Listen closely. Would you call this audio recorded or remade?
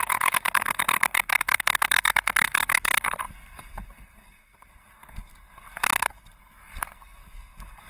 remade